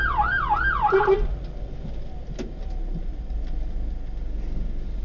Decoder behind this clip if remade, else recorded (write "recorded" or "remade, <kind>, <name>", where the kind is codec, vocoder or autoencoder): recorded